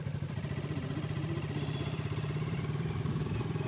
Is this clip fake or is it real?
fake